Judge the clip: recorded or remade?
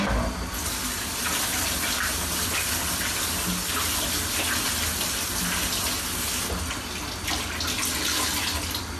recorded